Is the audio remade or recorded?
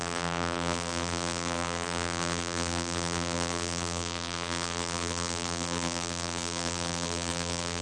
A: remade